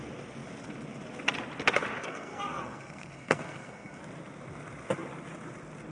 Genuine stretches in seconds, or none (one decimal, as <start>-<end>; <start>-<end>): 0.0-2.0; 4.0-5.9